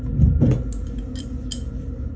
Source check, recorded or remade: recorded